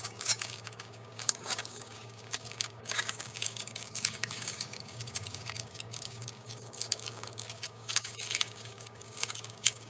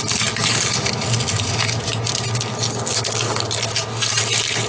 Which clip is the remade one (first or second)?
first